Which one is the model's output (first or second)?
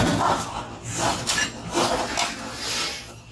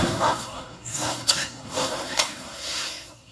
second